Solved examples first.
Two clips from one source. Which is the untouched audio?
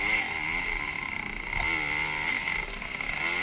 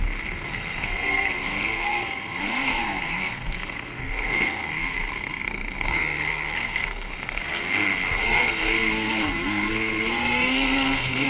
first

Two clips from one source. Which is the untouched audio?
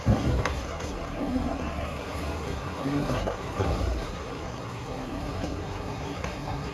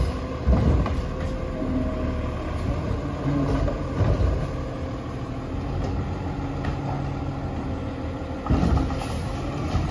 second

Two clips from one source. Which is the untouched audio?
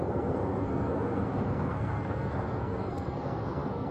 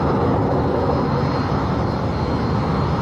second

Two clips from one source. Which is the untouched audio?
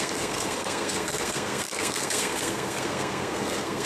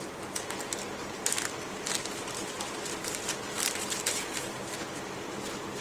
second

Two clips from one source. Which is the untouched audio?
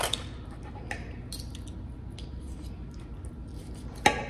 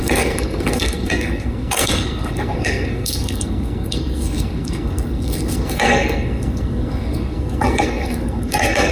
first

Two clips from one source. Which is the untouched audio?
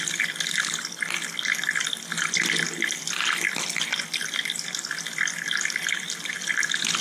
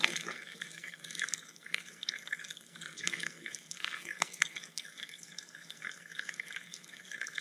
first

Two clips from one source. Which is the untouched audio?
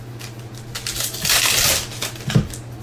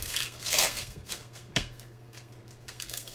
first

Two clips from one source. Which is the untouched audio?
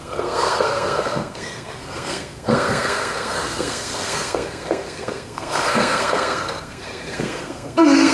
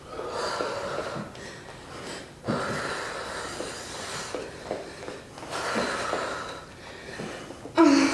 second